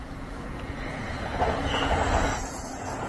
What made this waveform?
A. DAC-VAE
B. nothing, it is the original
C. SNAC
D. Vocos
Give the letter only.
D